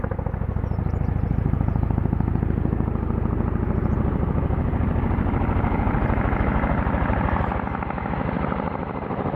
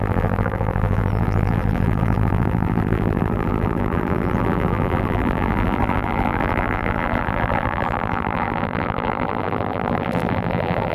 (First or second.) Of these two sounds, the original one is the first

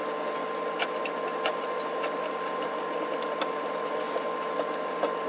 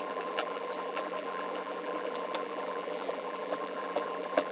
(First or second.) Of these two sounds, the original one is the first